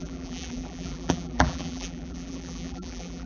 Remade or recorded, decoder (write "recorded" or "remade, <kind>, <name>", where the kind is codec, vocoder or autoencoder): remade, vocoder, BigVGAN v2